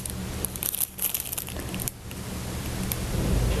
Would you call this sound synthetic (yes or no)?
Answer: no